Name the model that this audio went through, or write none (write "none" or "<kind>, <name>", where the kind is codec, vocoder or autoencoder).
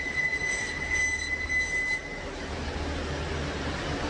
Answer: none